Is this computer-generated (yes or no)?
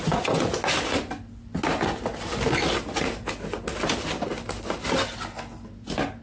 no